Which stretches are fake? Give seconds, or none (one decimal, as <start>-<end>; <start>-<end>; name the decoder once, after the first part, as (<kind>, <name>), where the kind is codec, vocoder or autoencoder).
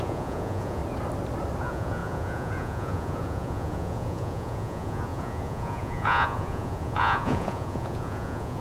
0.0-0.8 (vocoder, Vocos); 1.6-8.6